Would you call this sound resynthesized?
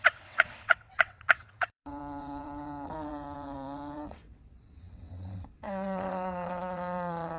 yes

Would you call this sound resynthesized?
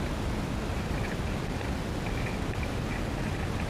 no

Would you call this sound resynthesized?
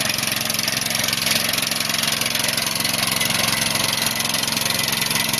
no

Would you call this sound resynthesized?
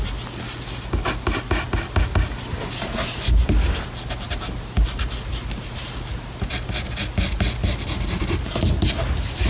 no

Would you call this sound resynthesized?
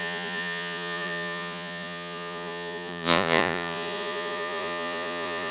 yes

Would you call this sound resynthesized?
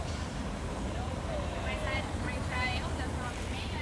yes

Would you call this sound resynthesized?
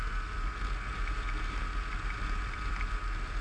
no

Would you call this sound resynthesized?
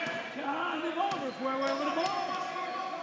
no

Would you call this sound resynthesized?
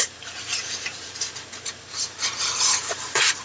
yes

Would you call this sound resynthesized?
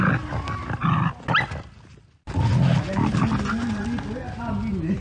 no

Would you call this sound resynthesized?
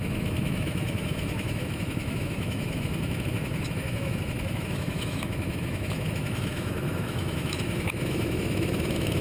yes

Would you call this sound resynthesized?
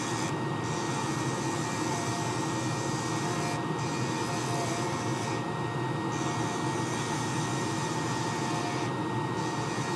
no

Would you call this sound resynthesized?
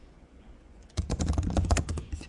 yes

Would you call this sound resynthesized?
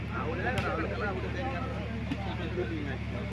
no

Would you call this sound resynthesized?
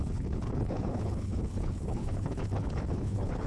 yes